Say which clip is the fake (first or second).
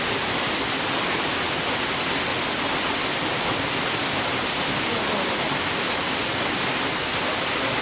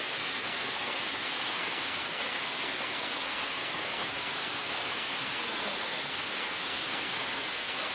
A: second